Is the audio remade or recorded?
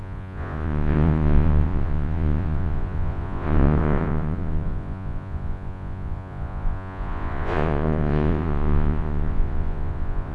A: remade